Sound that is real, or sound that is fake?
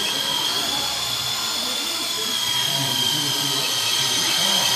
fake